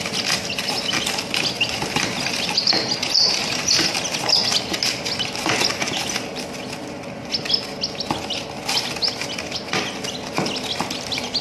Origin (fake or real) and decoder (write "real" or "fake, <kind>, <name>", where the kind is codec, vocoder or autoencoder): real